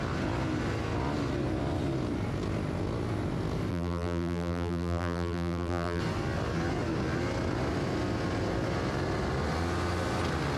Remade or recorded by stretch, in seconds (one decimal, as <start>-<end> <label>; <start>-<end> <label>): 0.0-3.7 recorded; 3.7-6.0 remade; 6.0-10.6 recorded